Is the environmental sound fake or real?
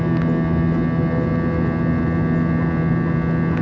real